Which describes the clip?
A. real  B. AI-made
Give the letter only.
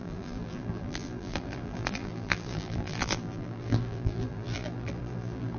B